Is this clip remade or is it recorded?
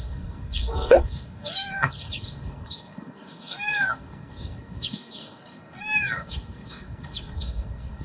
remade